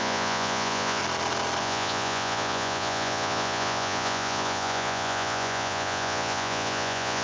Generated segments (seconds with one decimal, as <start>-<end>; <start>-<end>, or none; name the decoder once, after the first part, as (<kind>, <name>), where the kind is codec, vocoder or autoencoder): 0.0-1.0 (vocoder, Vocos); 1.6-7.2